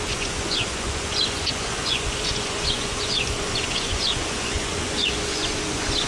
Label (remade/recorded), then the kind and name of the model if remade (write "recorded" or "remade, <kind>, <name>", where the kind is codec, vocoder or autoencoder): remade, vocoder, Vocos